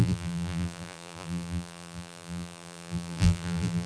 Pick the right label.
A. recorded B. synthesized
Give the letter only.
B